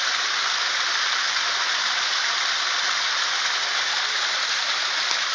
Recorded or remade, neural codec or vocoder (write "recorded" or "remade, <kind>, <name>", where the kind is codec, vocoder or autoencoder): recorded